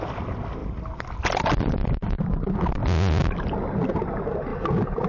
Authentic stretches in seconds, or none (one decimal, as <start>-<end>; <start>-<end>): 0.0-5.1